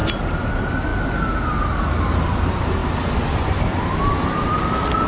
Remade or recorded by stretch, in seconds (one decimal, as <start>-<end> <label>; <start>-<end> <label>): 0.0-0.5 recorded; 0.5-5.1 remade

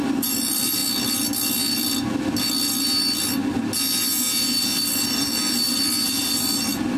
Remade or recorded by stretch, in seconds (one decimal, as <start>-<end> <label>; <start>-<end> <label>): 0.0-0.8 remade; 0.8-2.7 recorded; 2.7-3.4 remade; 3.4-4.0 recorded; 4.0-7.0 remade

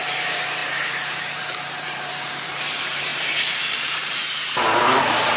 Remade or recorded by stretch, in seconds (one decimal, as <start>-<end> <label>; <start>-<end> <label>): 0.0-4.2 remade; 4.2-5.0 recorded; 5.0-5.4 remade